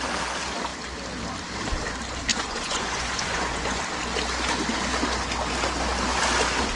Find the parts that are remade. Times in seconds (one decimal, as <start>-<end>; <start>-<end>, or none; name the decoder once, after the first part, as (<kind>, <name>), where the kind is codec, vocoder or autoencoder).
2.3-3.8 (vocoder, Vocos)